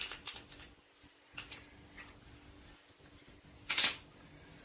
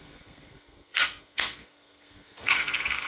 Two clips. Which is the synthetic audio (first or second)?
second